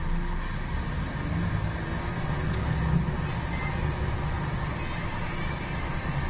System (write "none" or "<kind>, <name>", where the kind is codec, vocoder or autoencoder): none